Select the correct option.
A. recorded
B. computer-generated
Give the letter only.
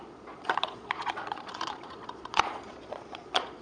B